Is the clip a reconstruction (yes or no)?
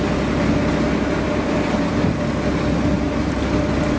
no